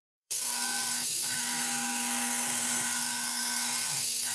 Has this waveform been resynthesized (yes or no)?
yes